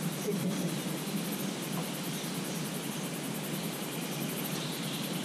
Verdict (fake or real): real